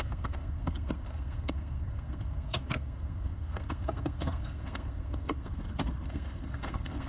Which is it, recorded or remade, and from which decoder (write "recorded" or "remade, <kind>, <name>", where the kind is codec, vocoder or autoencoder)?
remade, codec, SNAC